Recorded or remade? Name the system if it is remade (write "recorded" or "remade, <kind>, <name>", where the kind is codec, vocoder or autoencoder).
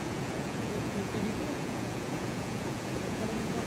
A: remade, vocoder, Vocos